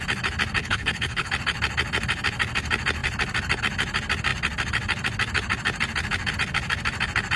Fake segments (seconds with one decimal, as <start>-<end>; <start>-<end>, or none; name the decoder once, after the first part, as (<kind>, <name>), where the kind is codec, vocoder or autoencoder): 0.6-1.3 (codec, HILCodec)